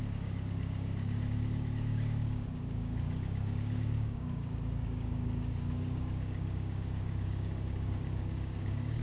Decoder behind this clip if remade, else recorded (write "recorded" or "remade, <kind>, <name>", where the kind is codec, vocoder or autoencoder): remade, codec, DAC